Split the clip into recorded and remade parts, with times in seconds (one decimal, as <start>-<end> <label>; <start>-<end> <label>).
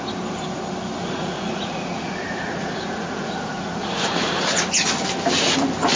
0.0-1.0 recorded; 1.0-4.6 remade; 4.6-6.0 recorded